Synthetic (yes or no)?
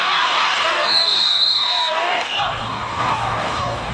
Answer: yes